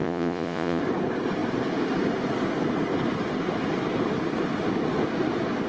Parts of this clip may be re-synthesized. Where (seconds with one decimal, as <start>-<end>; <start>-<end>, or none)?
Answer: 0.0-0.8